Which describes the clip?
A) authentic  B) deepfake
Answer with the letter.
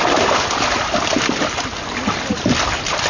A